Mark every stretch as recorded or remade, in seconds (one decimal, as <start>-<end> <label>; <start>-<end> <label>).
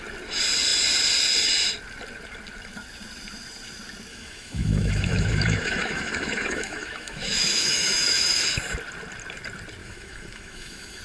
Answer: 0.0-4.1 recorded; 4.1-8.4 remade; 8.4-9.8 recorded; 9.8-11.0 remade